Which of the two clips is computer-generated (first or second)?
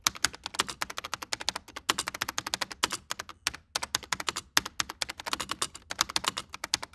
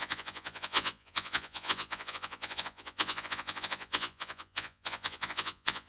second